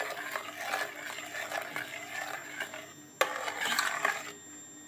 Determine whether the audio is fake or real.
real